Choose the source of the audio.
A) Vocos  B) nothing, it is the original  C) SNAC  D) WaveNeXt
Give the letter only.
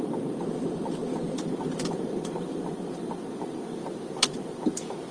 B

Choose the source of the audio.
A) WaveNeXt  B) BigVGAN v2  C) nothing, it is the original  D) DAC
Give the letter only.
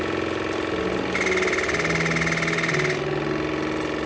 C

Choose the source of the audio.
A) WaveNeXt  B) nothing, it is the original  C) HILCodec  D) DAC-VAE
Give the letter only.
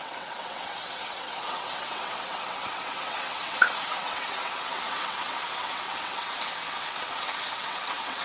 A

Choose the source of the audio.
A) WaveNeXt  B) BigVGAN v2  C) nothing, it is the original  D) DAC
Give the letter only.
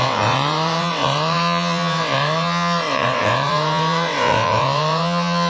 A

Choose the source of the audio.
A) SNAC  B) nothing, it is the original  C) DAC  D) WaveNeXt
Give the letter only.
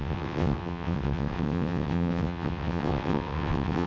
D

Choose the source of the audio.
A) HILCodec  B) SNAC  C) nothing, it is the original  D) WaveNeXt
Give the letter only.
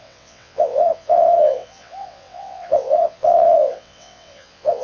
D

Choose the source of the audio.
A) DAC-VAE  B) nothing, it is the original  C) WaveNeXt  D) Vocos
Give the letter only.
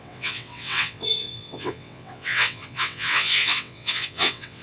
C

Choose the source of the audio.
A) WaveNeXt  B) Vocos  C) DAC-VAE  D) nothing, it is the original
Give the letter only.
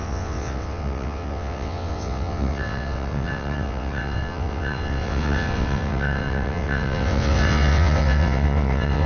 A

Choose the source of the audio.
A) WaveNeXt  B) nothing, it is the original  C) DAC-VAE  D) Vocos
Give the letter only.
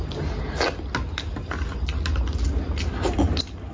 B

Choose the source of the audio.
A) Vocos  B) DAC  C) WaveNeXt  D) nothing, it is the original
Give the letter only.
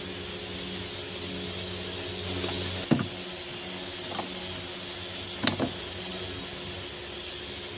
D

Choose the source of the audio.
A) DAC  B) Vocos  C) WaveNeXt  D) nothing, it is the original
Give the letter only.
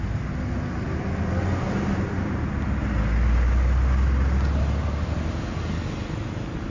D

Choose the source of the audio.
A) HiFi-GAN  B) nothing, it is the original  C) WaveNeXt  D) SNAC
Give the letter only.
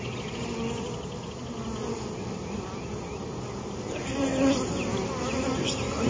B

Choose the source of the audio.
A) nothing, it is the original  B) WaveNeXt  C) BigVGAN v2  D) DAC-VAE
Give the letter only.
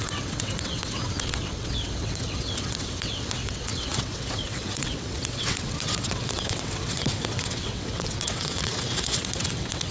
B